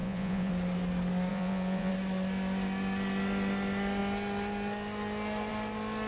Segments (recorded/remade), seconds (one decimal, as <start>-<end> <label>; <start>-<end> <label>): 0.0-0.5 remade; 0.5-1.3 recorded; 1.3-1.9 remade; 1.9-6.1 recorded